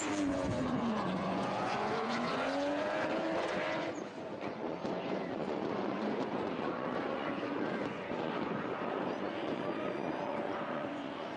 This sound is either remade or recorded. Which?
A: remade